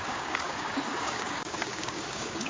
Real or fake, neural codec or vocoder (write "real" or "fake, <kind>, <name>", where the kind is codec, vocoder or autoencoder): fake, codec, DAC